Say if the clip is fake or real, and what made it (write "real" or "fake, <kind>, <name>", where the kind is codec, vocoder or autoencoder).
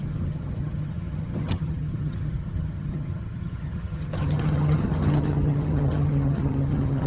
fake, vocoder, HiFi-GAN